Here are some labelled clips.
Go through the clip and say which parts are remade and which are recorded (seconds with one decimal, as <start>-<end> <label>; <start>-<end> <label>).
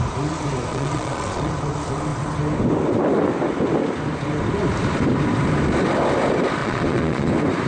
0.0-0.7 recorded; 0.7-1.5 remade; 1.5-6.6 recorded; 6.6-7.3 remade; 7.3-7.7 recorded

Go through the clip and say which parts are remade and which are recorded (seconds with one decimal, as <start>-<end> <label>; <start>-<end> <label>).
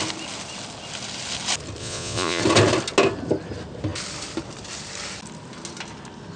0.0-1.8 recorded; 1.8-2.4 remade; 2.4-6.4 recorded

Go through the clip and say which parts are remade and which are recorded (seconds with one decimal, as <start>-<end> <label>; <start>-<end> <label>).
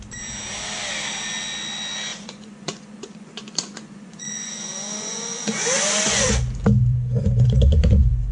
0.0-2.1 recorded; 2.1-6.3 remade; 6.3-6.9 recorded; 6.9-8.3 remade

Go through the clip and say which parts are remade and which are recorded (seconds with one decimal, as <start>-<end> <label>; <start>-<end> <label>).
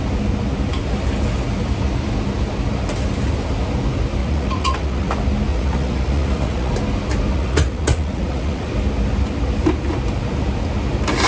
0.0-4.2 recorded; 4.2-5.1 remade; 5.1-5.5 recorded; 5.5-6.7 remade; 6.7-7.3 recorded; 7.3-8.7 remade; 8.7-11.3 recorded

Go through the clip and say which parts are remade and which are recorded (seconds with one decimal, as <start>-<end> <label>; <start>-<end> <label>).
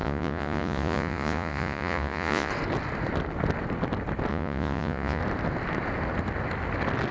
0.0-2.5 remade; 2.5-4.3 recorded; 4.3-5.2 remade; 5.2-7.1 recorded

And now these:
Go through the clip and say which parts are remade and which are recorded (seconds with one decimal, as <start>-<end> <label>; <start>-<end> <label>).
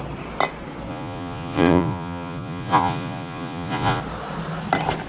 0.0-0.9 recorded; 0.9-4.0 remade; 4.0-5.1 recorded